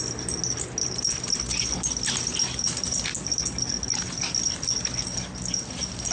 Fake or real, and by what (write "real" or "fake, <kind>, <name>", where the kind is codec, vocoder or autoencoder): real